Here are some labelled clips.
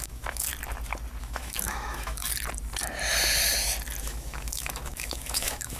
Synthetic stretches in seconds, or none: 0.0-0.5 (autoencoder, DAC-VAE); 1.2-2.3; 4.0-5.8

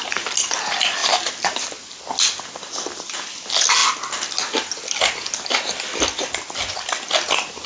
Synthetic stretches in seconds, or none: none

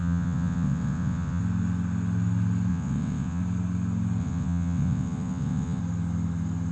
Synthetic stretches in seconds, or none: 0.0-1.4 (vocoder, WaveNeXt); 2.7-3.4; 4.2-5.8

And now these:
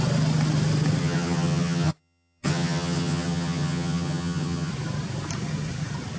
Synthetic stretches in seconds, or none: 1.0-4.7 (vocoder, HiFi-GAN)

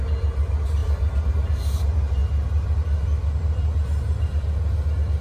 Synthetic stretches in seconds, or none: none

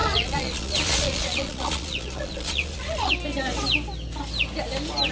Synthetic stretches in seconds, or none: 0.0-3.1 (vocoder, Vocos)